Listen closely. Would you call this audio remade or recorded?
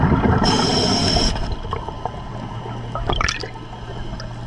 recorded